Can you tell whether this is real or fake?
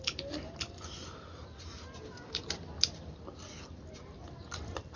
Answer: real